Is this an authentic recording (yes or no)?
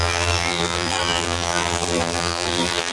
no